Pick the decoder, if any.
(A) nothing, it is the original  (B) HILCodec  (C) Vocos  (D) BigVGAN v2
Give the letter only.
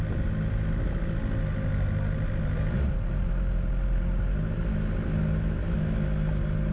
A